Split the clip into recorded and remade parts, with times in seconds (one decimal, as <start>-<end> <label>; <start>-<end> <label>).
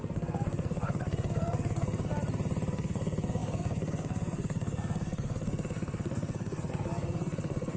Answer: 0.0-2.1 remade; 2.1-2.7 recorded; 2.7-7.8 remade